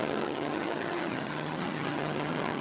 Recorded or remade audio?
remade